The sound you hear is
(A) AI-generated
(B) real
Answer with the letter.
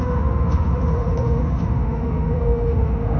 A